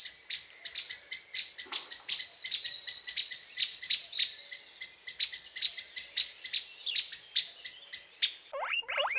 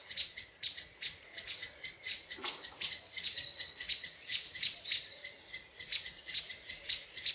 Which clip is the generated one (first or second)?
second